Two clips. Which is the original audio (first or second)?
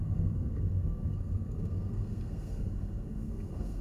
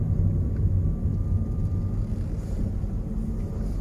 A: second